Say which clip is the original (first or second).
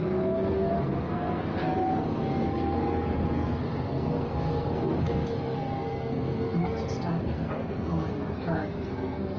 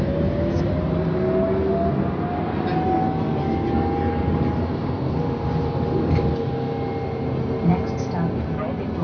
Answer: second